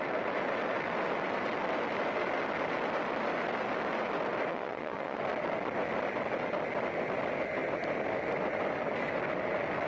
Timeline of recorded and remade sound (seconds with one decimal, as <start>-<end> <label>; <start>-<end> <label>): 0.0-4.5 recorded; 4.5-5.2 remade; 5.2-9.9 recorded

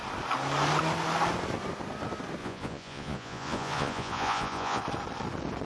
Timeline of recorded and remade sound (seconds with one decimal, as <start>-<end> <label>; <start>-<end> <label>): 0.0-2.4 recorded; 2.4-4.8 remade; 4.8-5.6 recorded

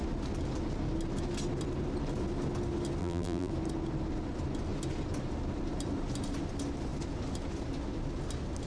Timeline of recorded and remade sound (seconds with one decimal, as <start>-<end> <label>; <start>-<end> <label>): 0.0-3.0 recorded; 3.0-3.5 remade; 3.5-8.7 recorded